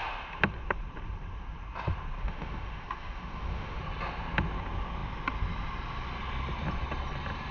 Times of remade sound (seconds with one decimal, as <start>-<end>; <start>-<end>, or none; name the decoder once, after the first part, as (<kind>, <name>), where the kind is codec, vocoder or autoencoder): 2.2-3.8 (autoencoder, DAC-VAE)

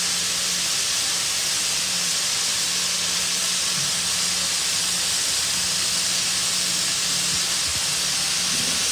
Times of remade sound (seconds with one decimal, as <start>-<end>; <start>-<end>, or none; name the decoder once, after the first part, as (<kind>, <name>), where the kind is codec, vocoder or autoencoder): none

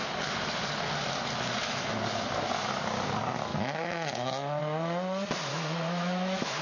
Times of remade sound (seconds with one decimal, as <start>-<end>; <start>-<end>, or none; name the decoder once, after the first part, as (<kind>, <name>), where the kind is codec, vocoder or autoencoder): 3.5-4.6 (autoencoder, DAC-VAE); 5.5-6.6

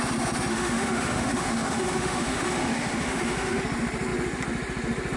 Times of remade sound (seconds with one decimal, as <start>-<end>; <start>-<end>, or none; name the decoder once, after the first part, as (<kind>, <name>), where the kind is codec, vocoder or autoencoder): 0.5-3.6 (autoencoder, DAC-VAE)

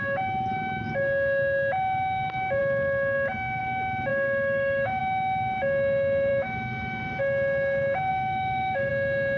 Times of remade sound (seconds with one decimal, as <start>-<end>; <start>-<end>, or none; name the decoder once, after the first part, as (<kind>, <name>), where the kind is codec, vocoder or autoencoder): 4.1-5.0 (autoencoder, DAC-VAE); 6.3-7.2; 8.1-8.9